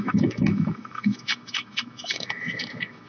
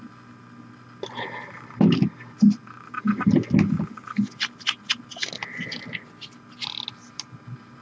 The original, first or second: second